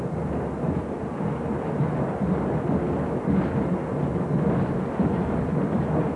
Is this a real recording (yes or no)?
yes